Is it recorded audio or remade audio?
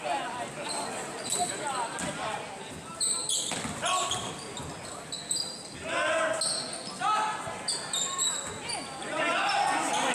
recorded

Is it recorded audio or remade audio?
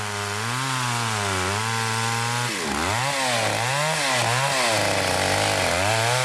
recorded